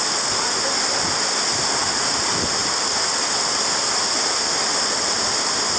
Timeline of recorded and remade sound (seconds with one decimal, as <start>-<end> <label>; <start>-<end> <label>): 0.0-5.8 recorded

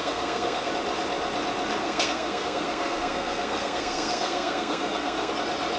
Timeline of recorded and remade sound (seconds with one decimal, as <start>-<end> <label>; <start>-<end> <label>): 0.0-0.7 remade; 0.7-1.8 recorded; 1.8-5.3 remade; 5.3-5.8 recorded

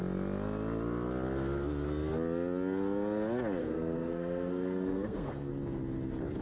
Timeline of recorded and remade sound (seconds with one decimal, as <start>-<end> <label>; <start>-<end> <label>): 0.0-3.6 recorded; 3.6-5.5 remade; 5.5-6.4 recorded

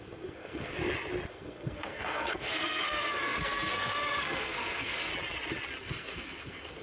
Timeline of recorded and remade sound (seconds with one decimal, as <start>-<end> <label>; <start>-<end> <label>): 0.0-0.8 remade; 0.8-1.3 recorded; 1.3-5.1 remade; 5.1-5.8 recorded; 5.8-6.8 remade

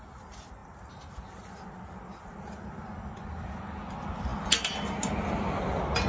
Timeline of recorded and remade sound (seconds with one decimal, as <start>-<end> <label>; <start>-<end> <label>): 0.0-6.1 recorded